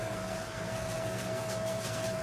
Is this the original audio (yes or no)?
no